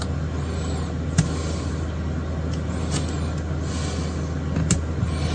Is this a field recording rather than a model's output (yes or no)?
yes